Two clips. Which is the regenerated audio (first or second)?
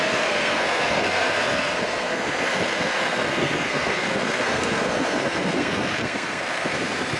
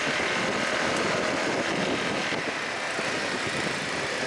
first